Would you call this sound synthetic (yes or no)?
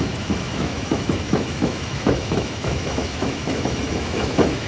yes